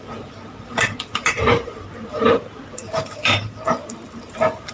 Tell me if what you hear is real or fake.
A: fake